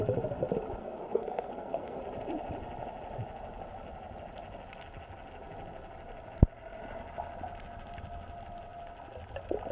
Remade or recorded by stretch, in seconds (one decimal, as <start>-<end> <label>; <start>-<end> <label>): 0.0-0.8 recorded; 0.8-2.0 remade; 2.0-9.7 recorded